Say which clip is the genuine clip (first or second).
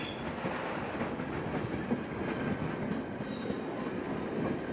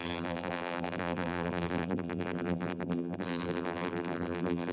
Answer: first